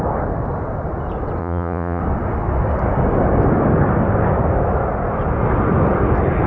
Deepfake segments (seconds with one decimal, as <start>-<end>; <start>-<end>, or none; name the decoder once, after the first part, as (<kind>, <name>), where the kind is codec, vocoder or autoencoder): 1.4-2.0 (vocoder, Vocos)

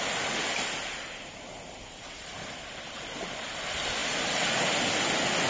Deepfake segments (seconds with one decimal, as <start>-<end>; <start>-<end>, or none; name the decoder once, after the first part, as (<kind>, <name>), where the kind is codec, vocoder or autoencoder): none

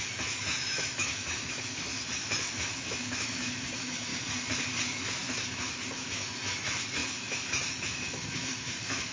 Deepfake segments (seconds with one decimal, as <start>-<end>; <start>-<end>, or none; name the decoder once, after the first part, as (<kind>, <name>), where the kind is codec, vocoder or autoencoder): 0.0-4.1 (autoencoder, DAC-VAE); 4.8-9.1

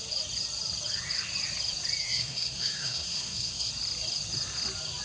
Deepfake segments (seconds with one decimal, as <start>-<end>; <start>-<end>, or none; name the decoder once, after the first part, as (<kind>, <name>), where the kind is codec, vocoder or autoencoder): 2.0-3.7 (codec, SNAC)